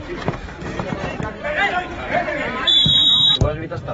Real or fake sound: fake